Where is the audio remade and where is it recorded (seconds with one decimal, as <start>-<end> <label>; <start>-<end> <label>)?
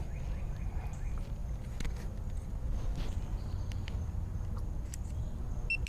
0.0-5.9 recorded